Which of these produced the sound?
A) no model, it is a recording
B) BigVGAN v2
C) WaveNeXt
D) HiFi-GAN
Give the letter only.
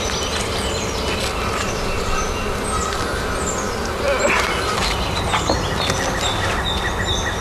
A